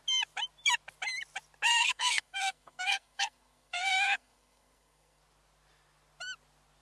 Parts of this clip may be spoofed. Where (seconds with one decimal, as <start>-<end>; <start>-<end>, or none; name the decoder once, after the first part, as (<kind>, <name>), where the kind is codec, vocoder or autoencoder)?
1.7-5.2 (codec, SNAC)